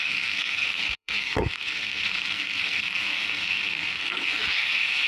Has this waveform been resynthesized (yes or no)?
yes